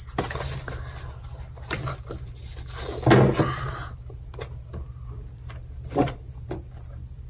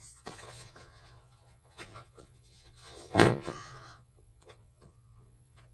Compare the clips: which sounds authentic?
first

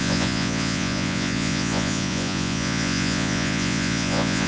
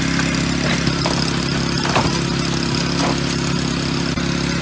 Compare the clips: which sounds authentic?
second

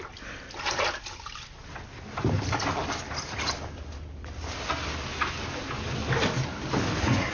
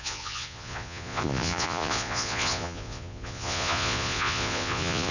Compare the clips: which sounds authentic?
first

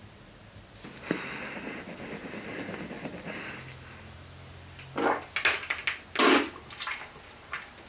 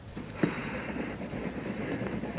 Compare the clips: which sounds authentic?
first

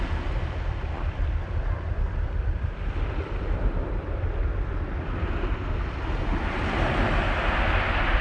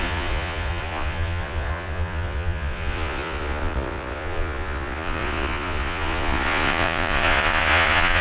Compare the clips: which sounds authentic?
first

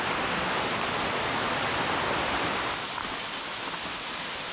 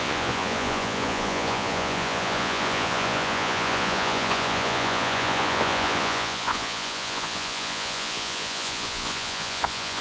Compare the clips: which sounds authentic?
first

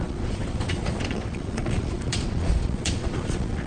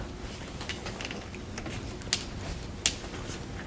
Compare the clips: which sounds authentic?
second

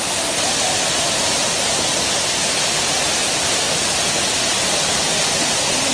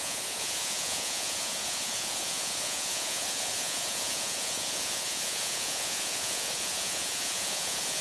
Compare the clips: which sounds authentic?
first